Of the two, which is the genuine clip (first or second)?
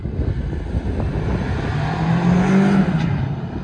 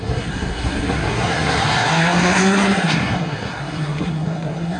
first